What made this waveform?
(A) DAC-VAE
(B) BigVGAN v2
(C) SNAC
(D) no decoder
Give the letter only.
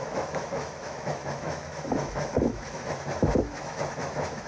A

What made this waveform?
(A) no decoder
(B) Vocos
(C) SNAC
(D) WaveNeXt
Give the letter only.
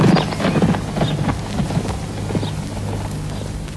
A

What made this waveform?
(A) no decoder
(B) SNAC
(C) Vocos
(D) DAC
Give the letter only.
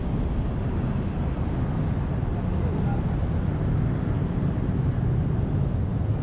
A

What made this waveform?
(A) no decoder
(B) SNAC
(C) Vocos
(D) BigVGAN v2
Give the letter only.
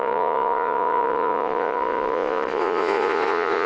C